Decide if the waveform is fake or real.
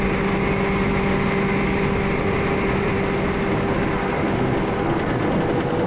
real